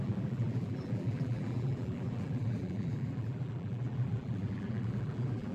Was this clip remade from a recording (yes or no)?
yes